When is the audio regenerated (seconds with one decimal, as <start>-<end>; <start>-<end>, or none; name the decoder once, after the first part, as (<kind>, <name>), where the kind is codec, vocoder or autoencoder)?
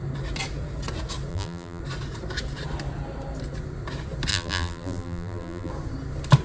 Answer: 1.3-1.8 (vocoder, BigVGAN v2); 4.3-5.7